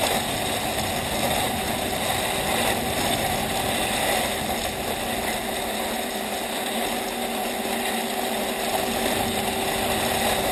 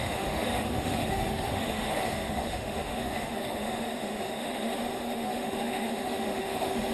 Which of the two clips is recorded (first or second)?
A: first